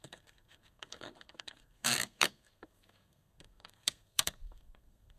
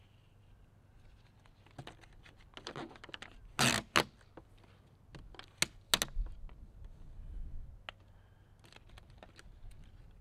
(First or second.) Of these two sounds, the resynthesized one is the first